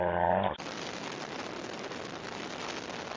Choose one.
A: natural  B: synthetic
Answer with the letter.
A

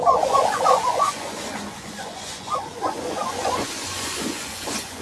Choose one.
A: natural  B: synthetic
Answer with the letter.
B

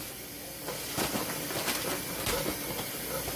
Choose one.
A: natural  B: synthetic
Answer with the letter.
A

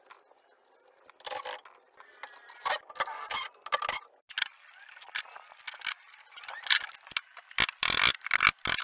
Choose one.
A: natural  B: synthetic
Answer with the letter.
A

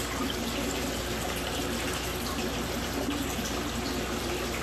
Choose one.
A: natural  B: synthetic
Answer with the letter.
A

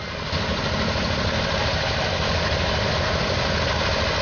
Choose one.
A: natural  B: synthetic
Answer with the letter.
A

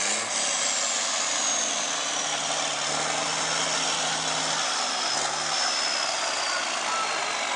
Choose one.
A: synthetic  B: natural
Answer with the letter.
B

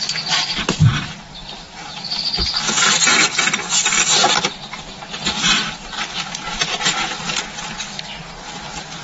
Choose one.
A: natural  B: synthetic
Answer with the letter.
A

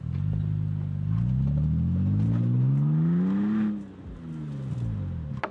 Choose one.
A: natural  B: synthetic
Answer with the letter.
A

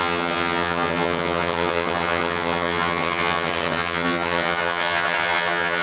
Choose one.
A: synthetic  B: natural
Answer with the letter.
A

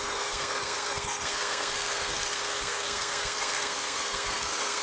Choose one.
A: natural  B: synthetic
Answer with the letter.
B